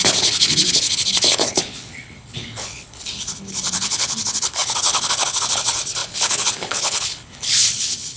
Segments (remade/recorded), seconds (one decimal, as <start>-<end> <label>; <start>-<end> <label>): 0.0-8.2 remade